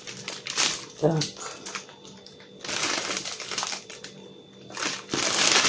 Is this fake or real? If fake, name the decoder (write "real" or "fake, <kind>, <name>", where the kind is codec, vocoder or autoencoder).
real